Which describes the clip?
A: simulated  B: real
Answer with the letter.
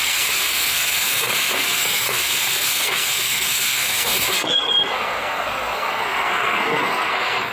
A